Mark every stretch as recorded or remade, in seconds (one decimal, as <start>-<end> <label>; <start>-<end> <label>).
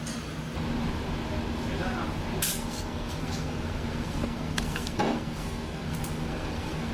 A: 0.0-2.5 recorded; 2.5-6.9 remade